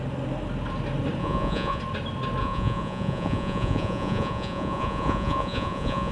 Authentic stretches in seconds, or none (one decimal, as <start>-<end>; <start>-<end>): 0.0-1.2; 1.8-2.4